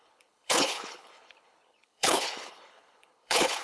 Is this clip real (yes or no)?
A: no